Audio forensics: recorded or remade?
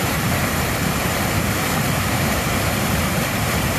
remade